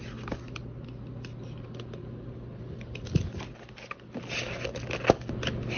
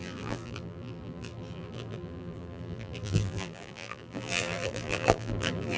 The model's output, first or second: second